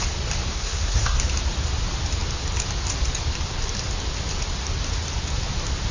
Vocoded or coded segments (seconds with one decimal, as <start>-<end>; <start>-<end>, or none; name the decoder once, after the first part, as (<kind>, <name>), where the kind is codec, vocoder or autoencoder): 0.5-1.2 (codec, SNAC)